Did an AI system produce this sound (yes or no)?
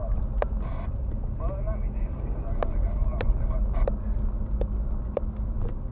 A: no